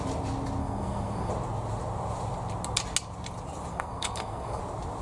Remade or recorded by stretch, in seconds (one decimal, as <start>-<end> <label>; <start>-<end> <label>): 0.0-0.6 recorded; 0.6-1.3 remade; 1.3-3.7 recorded; 3.7-4.6 remade; 4.6-5.0 recorded